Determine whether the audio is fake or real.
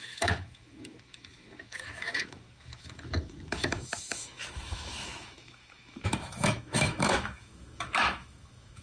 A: fake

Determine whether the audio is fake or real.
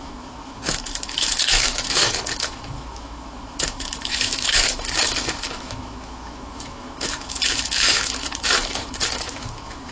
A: fake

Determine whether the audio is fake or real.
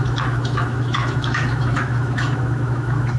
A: fake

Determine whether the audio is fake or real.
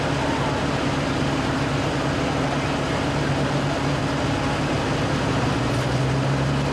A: real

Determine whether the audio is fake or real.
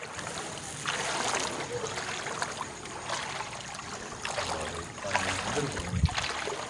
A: real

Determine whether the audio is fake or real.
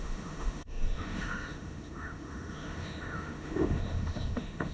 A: fake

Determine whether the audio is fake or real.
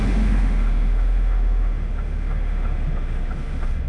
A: fake